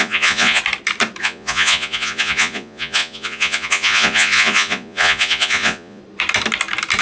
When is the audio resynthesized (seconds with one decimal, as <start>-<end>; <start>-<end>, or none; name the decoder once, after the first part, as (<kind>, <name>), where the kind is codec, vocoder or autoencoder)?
0.0-0.6 (vocoder, Vocos); 1.2-6.0